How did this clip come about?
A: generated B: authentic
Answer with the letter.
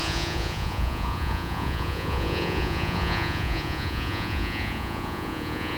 A